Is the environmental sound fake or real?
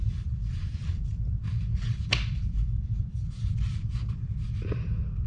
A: fake